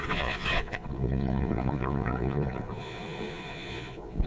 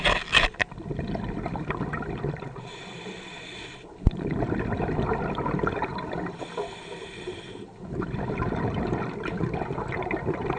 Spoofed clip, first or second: first